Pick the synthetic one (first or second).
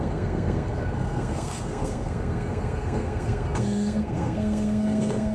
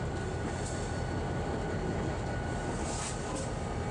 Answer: first